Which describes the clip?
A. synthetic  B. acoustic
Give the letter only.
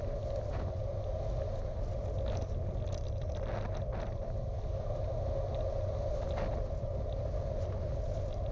B